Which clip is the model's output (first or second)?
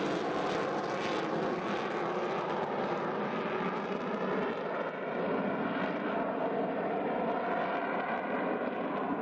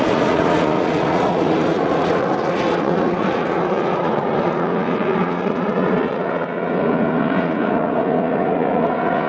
second